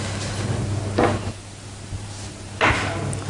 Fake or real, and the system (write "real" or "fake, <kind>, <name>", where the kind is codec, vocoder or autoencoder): real